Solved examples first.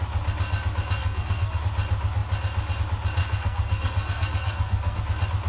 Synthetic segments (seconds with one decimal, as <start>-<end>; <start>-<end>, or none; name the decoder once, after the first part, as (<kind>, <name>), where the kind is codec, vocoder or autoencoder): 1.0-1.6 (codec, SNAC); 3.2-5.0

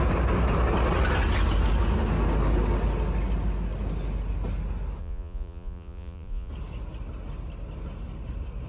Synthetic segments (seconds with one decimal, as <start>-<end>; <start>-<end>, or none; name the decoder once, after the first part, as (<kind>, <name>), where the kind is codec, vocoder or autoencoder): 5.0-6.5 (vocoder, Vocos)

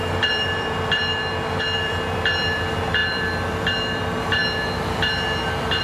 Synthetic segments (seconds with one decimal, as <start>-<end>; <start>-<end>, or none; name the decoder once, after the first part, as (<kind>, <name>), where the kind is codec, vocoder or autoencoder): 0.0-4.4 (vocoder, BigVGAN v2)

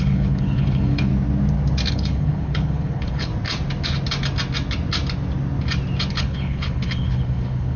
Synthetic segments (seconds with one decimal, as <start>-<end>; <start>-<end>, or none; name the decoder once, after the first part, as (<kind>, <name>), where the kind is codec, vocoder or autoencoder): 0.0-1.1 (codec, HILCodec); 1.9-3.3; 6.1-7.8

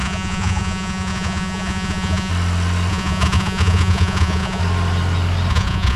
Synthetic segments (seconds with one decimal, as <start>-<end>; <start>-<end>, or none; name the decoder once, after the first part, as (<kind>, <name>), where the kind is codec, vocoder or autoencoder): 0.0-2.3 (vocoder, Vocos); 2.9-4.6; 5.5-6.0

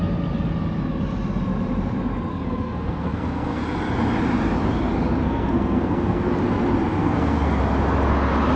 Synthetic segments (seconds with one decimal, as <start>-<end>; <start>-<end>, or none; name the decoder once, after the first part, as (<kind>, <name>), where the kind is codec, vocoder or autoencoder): 2.3-3.6 (codec, SNAC); 5.2-6.3; 7.0-7.6